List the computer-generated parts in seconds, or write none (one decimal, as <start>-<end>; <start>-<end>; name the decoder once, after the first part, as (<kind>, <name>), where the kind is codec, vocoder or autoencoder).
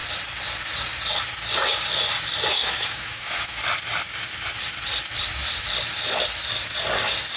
2.5-3.6 (autoencoder, DAC-VAE)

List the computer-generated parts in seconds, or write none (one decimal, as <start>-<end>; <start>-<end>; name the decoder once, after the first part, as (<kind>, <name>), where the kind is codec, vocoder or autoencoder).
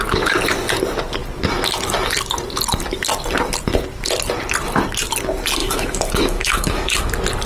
5.6-7.1 (autoencoder, DAC-VAE)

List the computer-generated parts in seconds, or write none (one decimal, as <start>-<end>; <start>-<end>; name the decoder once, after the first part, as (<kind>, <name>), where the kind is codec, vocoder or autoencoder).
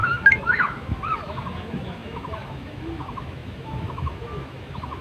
0.0-5.0 (autoencoder, DAC-VAE)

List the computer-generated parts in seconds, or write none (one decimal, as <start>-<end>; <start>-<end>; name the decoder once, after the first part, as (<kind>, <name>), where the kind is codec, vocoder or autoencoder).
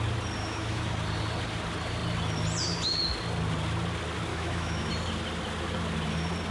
0.4-0.9 (autoencoder, DAC-VAE); 4.3-4.9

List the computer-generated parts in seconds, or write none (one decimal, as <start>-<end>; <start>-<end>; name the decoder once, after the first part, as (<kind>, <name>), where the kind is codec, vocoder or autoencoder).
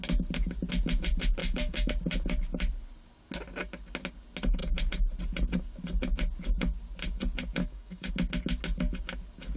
1.4-1.9 (autoencoder, DAC-VAE); 7.6-8.1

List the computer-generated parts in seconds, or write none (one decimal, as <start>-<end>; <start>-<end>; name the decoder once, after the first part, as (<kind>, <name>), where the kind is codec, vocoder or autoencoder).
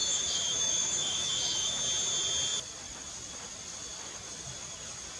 0.0-1.8 (autoencoder, DAC-VAE)